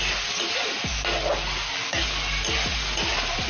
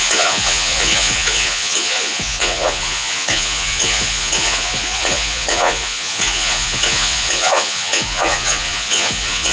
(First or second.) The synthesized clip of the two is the second